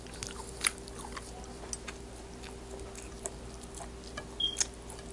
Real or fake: real